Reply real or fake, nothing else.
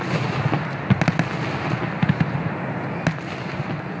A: real